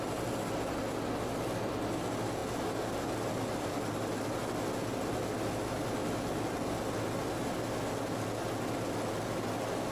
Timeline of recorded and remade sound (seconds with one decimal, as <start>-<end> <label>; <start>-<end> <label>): 0.0-9.9 recorded